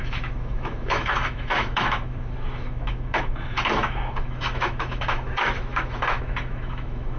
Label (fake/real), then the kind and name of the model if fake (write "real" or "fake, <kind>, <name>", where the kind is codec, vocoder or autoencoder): fake, autoencoder, DAC-VAE